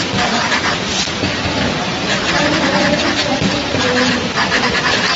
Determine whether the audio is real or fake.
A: real